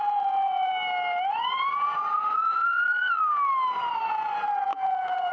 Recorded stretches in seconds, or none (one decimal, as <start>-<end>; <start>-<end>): 0.7-1.3; 3.2-3.9